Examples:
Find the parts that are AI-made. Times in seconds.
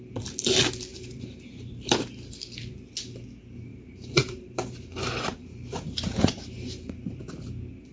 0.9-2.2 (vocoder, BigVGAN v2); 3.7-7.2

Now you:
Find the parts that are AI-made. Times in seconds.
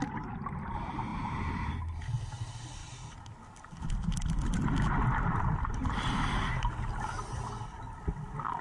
1.1-1.7 (vocoder, BigVGAN v2)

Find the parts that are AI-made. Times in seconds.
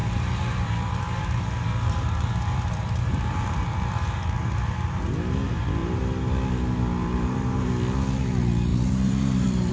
0.0-5.0 (vocoder, BigVGAN v2); 7.0-7.7; 8.7-9.7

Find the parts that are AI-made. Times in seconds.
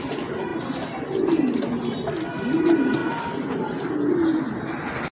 0.5-2.6 (vocoder, BigVGAN v2)